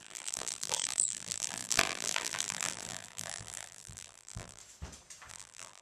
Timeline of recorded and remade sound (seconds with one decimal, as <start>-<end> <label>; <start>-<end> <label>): 0.0-4.6 remade; 4.6-5.3 recorded; 5.3-5.8 remade